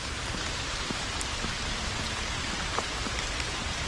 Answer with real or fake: fake